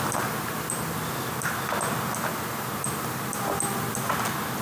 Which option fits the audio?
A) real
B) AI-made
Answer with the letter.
A